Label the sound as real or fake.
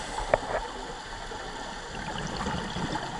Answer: real